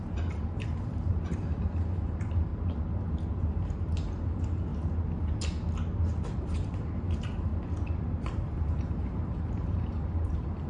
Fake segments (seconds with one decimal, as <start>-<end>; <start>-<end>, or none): 0.0-2.5; 3.4-4.7; 6.3-7.5; 8.2-10.7